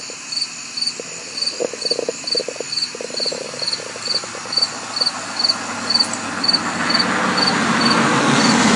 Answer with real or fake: real